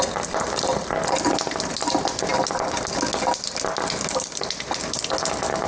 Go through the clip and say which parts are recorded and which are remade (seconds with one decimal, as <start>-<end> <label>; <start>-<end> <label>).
0.0-5.7 recorded